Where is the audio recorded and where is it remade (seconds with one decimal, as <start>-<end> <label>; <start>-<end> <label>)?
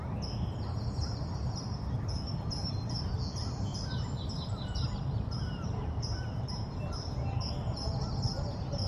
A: 0.0-3.7 recorded; 3.7-7.5 remade; 7.5-8.9 recorded